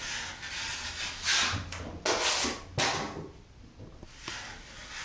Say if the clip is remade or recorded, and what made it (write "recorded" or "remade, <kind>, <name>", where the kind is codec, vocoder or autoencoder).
recorded